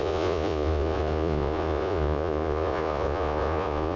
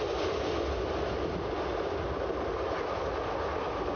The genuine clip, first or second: second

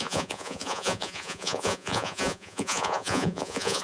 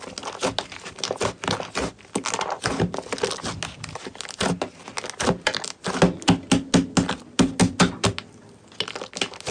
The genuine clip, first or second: second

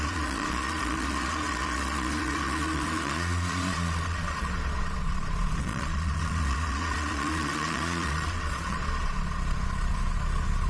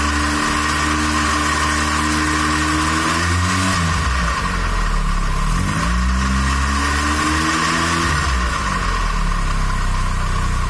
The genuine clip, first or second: second